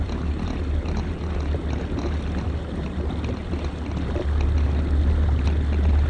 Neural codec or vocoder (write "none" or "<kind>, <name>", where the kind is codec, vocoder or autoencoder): none